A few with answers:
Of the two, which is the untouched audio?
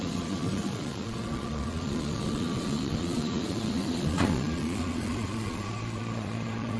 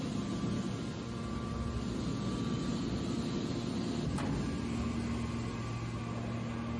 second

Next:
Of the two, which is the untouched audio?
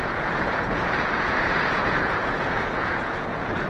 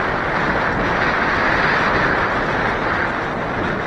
second